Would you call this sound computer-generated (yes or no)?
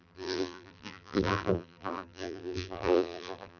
yes